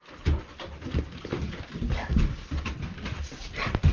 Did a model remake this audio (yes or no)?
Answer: no